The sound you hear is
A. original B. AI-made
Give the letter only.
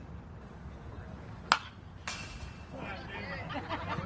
A